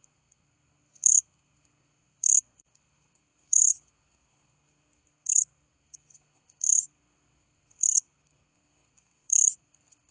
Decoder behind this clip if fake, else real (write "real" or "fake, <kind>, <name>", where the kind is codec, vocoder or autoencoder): fake, codec, SNAC